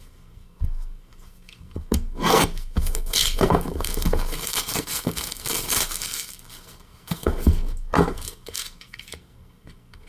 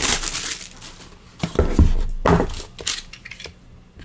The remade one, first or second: first